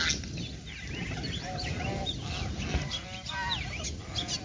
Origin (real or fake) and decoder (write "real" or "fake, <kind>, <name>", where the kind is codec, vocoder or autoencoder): real